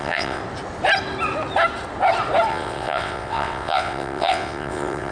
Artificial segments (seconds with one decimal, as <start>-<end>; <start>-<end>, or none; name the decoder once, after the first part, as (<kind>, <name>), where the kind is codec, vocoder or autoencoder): 0.0-0.4 (vocoder, WaveNeXt); 2.5-5.1